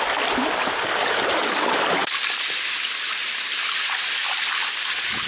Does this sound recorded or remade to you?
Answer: recorded